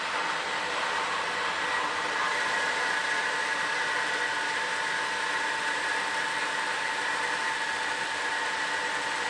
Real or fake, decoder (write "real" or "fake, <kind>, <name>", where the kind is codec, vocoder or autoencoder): real